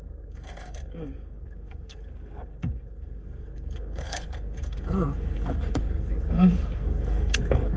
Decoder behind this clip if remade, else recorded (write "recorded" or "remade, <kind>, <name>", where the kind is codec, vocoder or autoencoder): remade, codec, SNAC